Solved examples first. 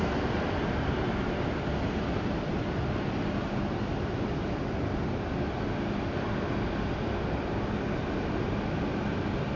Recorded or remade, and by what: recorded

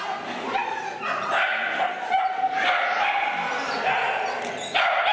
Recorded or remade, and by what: recorded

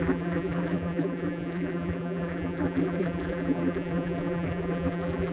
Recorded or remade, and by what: remade, vocoder, BigVGAN v2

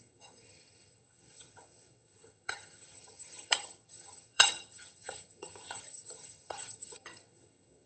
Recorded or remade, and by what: remade, vocoder, HiFi-GAN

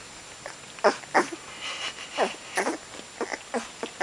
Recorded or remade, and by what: recorded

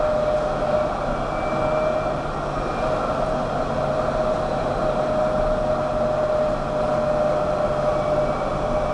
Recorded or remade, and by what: recorded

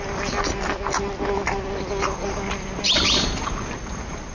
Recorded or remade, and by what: recorded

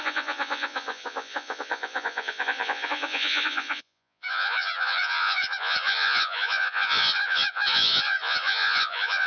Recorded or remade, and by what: remade, vocoder, Vocos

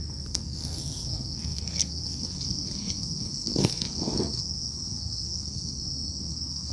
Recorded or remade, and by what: remade, codec, SNAC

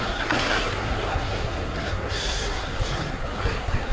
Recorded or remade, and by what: remade, codec, SNAC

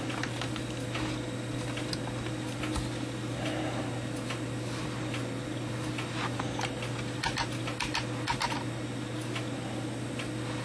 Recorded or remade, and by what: recorded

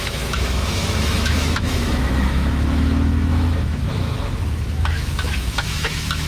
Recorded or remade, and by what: remade, autoencoder, DAC-VAE